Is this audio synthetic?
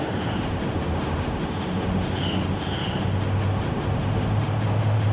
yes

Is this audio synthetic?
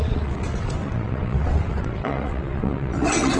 yes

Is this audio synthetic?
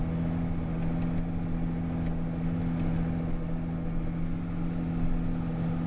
no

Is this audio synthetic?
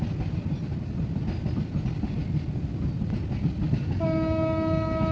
no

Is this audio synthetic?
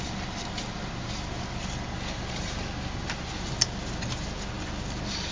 no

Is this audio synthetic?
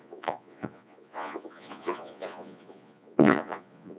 yes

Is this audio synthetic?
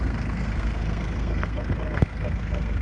yes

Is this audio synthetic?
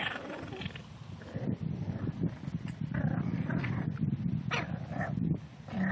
no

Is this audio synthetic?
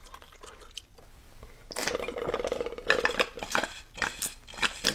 no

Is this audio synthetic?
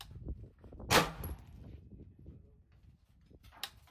no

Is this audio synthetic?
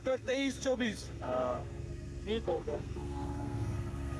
yes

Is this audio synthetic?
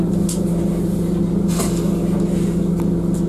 no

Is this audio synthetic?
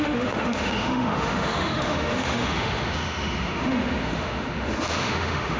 yes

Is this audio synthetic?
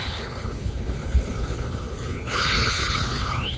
yes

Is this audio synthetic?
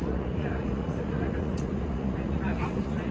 yes